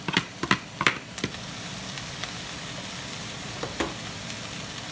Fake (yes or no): no